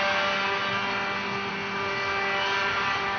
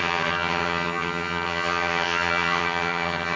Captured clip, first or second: first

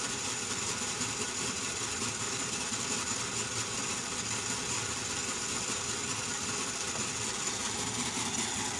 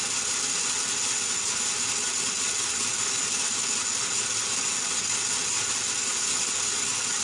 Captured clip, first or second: second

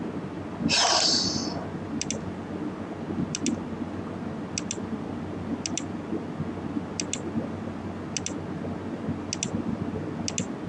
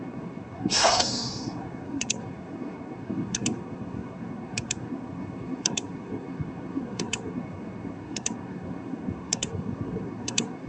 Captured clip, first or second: first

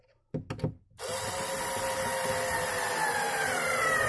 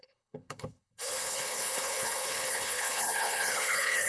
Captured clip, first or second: first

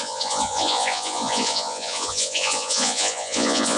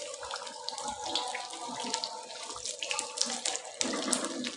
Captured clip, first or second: second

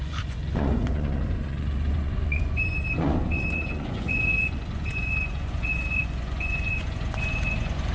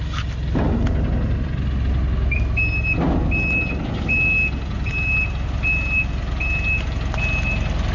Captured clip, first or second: second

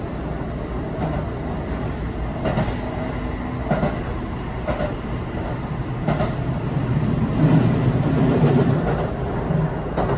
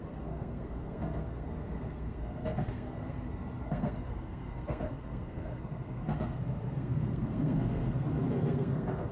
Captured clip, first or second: first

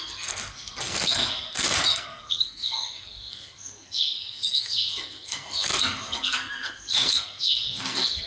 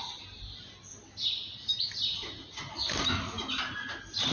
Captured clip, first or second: second